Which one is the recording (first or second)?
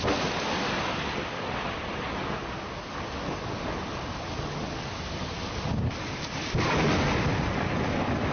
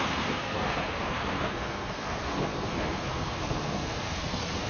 first